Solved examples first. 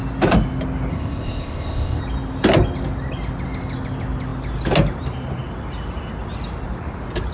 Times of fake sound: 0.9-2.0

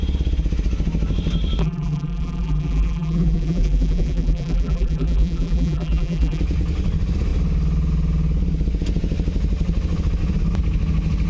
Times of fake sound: 1.6-6.4

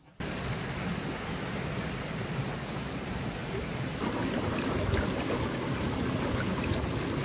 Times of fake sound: none

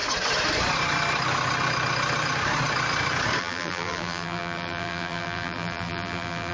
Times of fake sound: 3.4-6.5

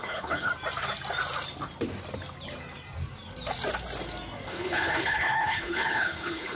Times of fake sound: 0.0-0.5; 4.5-6.6